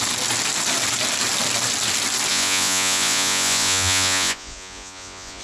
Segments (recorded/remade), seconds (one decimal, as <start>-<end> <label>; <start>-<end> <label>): 0.0-2.3 recorded; 2.3-5.4 remade